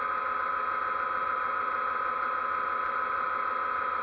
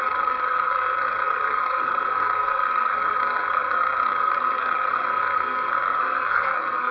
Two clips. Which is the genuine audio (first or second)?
first